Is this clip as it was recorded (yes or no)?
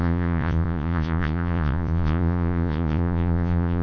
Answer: no